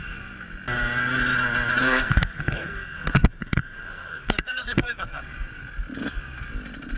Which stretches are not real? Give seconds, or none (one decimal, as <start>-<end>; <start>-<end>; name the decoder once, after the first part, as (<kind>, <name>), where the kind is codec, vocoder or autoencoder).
1.8-5.2 (codec, SNAC)